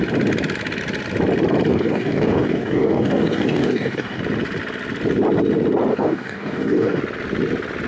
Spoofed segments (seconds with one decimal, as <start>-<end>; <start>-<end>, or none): 1.7-4.2; 5.9-7.0